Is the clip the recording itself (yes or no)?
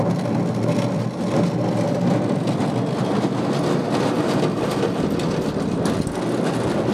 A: yes